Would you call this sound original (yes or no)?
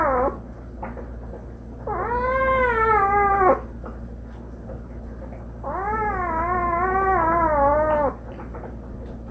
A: yes